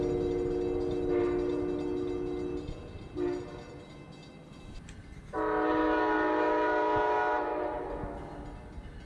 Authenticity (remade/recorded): recorded